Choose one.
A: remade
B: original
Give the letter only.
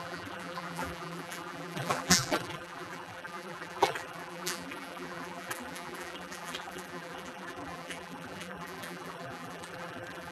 A